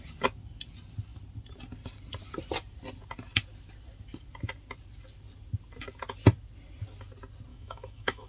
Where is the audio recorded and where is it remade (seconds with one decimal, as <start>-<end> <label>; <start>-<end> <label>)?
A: 0.0-7.5 recorded; 7.5-8.3 remade